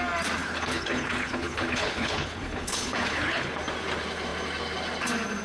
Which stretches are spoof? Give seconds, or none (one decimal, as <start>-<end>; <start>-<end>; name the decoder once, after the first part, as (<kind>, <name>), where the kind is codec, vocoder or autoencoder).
0.4-3.6 (codec, HILCodec)